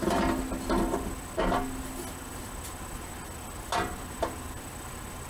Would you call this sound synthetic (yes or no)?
no